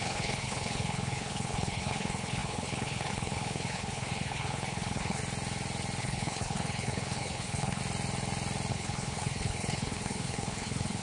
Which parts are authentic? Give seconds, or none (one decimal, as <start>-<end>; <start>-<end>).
5.2-6.0; 7.8-8.7